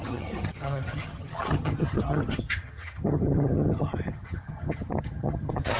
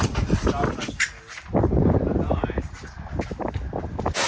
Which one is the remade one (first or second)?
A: first